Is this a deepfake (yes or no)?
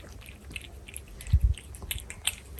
no